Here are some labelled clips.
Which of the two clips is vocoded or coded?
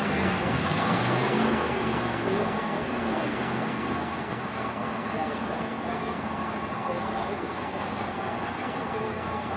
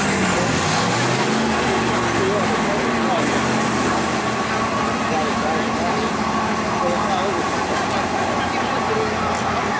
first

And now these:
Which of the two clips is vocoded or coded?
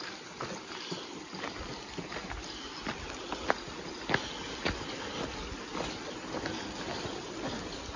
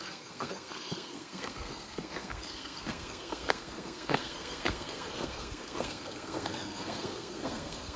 second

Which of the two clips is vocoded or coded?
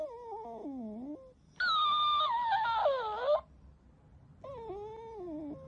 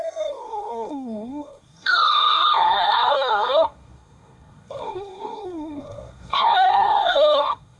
second